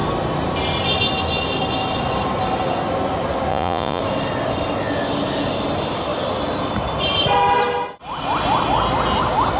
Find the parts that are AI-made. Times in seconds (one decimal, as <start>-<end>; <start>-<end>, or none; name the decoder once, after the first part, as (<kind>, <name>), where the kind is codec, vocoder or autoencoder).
3.5-4.0 (vocoder, Vocos)